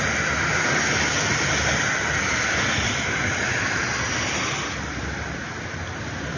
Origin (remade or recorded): recorded